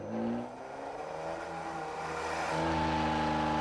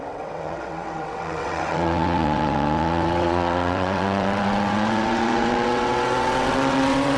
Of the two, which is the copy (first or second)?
second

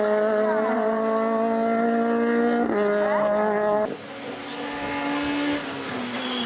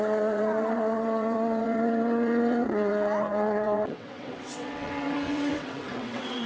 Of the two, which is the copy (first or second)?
second